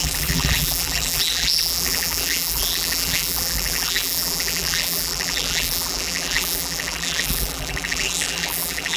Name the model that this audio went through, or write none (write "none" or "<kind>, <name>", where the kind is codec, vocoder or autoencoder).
vocoder, BigVGAN v2